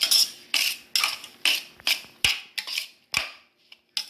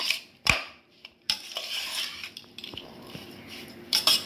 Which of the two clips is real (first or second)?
first